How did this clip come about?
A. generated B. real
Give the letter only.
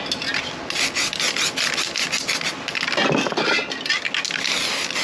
B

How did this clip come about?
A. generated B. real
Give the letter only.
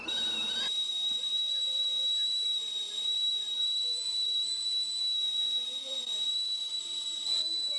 A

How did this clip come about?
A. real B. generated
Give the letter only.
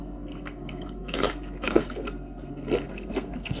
B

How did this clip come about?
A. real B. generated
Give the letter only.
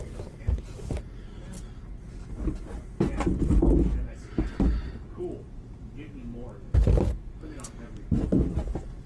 A